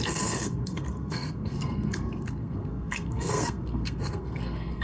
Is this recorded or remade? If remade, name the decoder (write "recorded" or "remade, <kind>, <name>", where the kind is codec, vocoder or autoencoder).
remade, codec, SNAC